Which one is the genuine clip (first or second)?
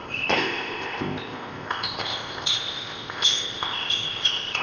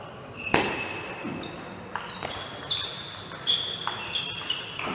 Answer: second